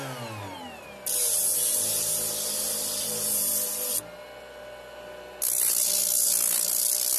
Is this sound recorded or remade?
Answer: recorded